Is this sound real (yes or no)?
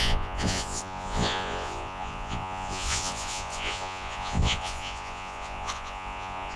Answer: no